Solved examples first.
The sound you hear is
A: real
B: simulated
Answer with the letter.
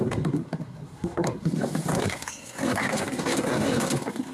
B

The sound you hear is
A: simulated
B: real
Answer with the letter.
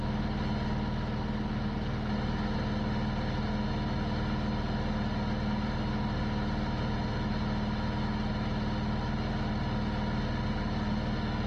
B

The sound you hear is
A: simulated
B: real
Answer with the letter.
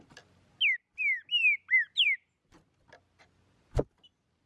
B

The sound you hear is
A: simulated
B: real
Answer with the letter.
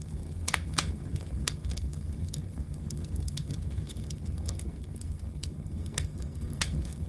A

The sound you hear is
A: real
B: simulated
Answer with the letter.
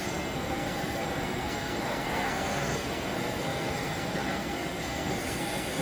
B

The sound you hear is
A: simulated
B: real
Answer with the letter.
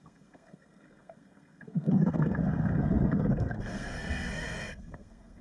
A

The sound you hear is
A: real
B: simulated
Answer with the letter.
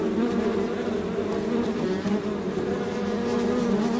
A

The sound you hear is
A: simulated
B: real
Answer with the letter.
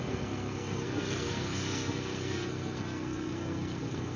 A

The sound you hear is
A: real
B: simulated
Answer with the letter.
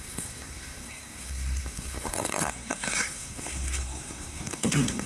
B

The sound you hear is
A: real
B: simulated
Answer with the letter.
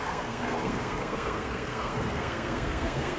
B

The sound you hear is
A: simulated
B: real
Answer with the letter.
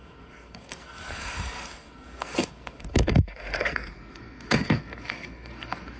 A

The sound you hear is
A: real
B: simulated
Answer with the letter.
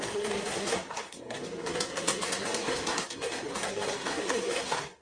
B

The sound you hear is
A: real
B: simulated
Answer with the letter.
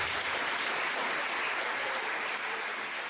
A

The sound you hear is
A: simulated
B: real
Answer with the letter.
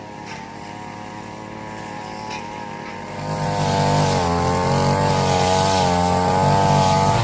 B